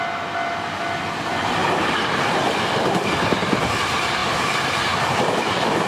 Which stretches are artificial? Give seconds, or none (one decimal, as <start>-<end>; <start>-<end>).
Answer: none